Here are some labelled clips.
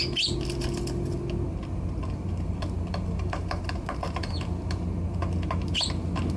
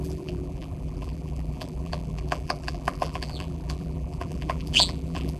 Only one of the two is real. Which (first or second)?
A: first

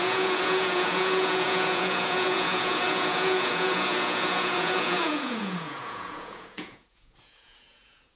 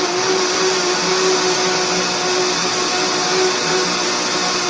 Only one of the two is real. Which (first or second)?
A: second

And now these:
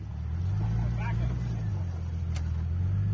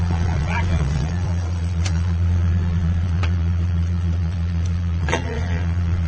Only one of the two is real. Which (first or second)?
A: first